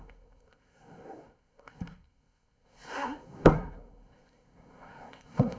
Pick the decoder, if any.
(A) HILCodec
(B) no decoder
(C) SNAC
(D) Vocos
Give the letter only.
C